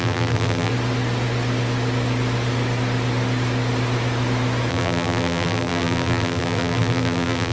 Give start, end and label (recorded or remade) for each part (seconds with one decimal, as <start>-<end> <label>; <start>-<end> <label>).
0.0-0.7 remade; 0.7-4.7 recorded; 4.7-7.5 remade